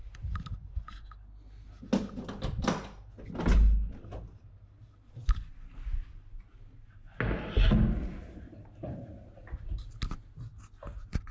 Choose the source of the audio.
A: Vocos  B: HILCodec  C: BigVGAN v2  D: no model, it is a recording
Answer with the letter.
D